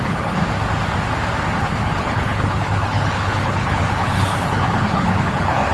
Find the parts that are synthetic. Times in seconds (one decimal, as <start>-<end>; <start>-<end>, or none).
0.0-0.4; 1.6-5.7